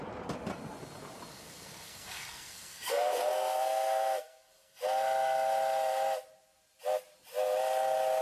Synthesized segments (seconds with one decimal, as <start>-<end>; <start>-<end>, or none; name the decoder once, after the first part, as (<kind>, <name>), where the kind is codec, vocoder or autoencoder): 1.3-4.8 (codec, SNAC)